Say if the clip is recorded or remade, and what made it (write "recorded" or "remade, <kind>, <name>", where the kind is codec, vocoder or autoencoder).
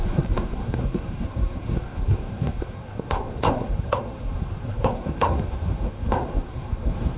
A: remade, codec, SNAC